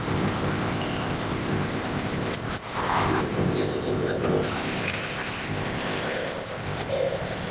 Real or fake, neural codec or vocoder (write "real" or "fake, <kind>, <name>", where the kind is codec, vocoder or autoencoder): fake, codec, ZipCodec